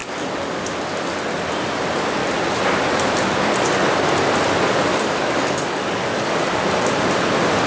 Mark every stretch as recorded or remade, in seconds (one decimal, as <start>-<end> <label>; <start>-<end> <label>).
0.0-0.7 remade; 0.7-4.9 recorded; 4.9-6.6 remade; 6.6-7.7 recorded